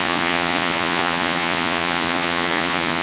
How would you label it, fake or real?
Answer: fake